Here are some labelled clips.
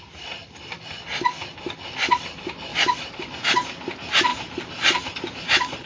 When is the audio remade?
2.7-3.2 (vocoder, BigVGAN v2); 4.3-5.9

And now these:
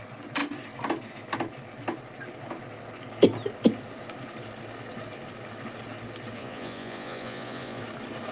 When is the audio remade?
6.4-7.8 (vocoder, Vocos)

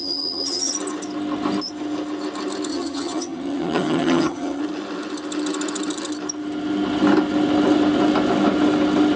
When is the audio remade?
0.0-0.7 (vocoder, HiFi-GAN); 2.7-4.6

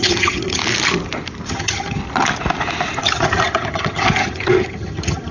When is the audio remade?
0.0-0.6 (vocoder, HiFi-GAN); 1.5-2.0; 3.0-5.3

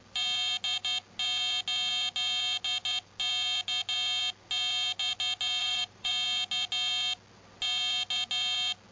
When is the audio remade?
5.6-6.1 (vocoder, BigVGAN v2)

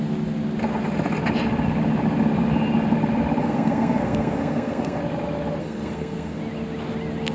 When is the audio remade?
3.4-5.0 (codec, SNAC); 5.6-6.4

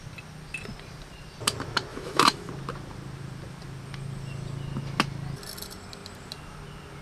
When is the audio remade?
1.9-2.5 (autoencoder, DAC-VAE)